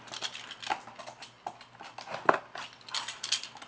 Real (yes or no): yes